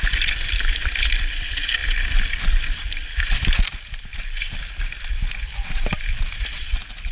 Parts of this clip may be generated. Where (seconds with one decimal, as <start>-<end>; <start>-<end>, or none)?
1.8-3.6; 4.1-5.1